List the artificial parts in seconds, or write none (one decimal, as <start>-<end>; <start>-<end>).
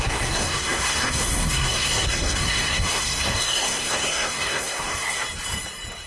0.0-5.2